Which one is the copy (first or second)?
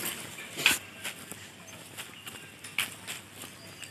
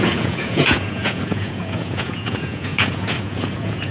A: second